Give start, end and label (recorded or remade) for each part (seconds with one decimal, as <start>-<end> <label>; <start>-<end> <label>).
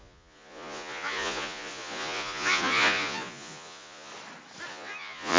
0.0-4.1 remade; 4.1-4.7 recorded; 4.7-5.4 remade